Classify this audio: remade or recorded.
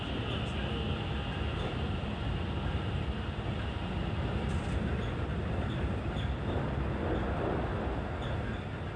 recorded